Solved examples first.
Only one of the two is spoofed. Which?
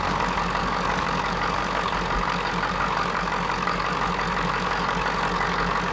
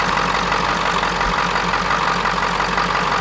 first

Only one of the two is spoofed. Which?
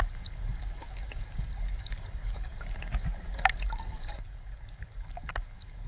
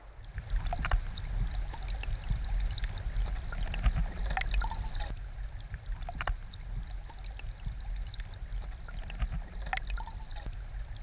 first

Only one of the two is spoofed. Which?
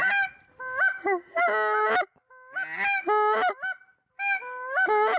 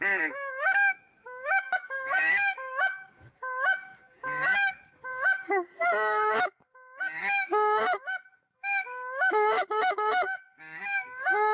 second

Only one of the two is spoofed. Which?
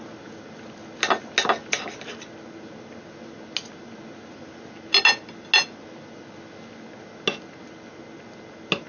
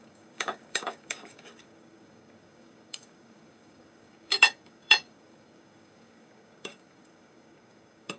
second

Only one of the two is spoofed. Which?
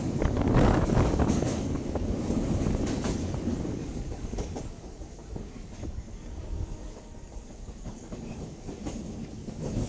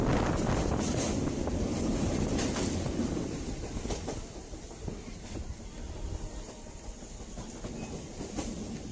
first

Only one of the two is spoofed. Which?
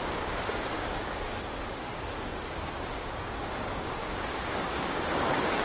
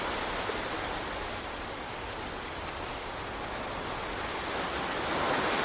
first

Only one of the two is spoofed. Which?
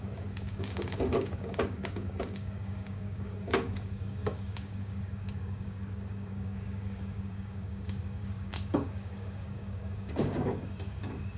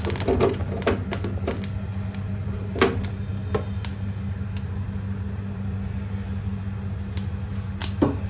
first